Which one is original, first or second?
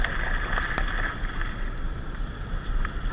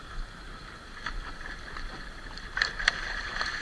first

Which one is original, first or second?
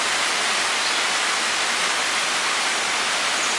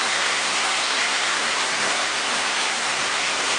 first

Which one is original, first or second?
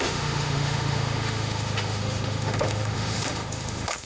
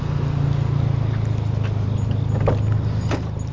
second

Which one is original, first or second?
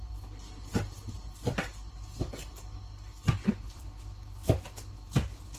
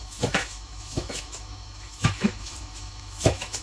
first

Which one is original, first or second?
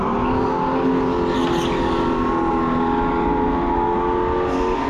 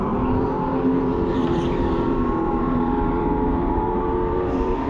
first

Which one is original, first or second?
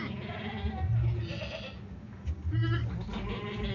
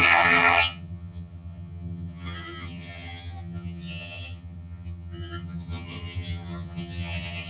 first